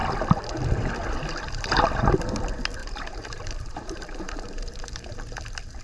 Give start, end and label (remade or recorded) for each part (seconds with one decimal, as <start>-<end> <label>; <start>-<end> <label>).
0.0-2.8 recorded; 2.8-5.3 remade; 5.3-5.8 recorded